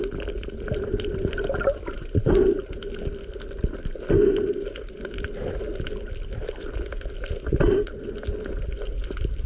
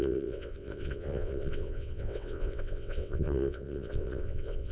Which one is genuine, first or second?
first